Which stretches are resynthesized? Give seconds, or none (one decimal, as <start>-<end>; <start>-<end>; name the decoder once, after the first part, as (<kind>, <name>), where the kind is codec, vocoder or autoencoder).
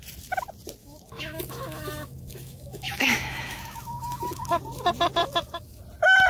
0.8-4.6 (autoencoder, DAC-VAE); 5.2-5.8